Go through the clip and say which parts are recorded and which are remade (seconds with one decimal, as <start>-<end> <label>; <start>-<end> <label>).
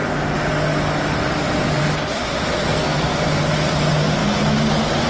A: 0.0-2.6 recorded; 2.6-3.2 remade; 3.2-5.1 recorded